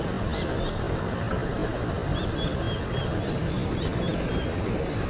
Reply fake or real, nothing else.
real